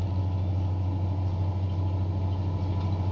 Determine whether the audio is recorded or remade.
recorded